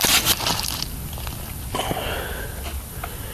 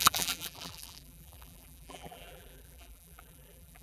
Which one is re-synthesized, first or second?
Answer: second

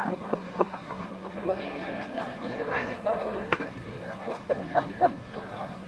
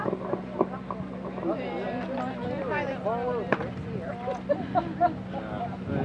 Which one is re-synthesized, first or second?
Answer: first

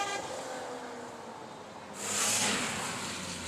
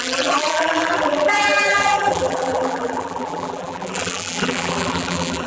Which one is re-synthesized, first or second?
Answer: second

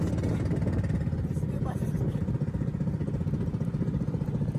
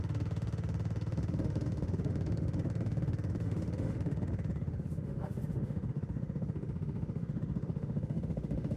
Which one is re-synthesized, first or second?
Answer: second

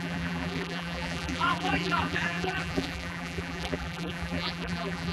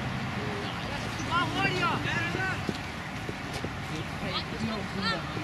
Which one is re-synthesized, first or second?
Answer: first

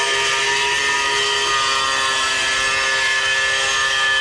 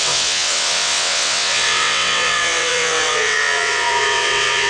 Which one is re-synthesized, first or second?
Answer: second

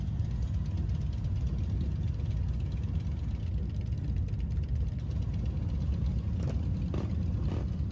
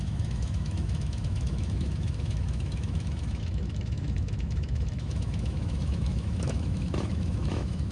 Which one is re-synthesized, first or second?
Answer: second